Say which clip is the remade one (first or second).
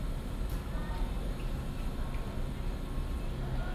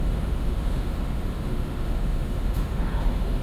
second